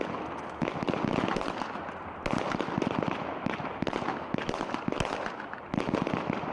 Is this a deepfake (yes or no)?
no